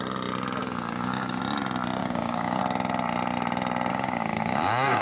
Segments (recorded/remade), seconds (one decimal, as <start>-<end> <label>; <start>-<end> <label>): 0.0-0.6 recorded; 0.6-1.4 remade; 1.4-2.0 recorded; 2.0-2.6 remade; 2.6-3.9 recorded; 3.9-5.0 remade